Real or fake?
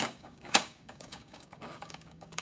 fake